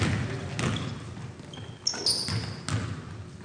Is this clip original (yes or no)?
yes